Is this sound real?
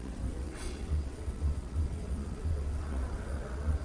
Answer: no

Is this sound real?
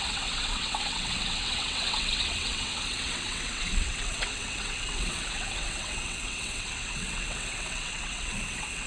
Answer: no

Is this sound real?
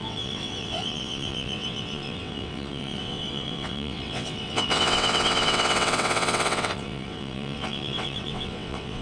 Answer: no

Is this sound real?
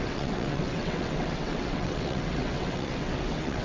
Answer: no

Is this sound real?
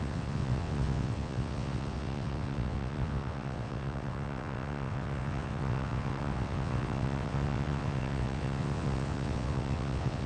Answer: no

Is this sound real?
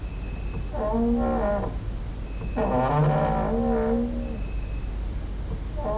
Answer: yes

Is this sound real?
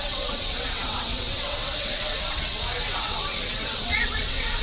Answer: no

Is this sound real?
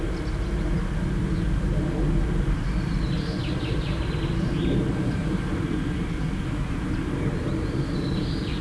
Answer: yes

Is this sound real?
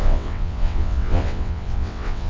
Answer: no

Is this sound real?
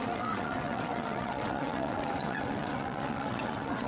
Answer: no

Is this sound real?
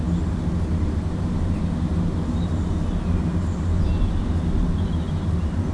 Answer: yes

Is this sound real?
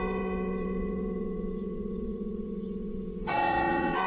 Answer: no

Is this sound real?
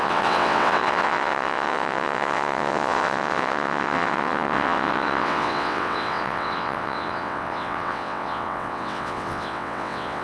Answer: no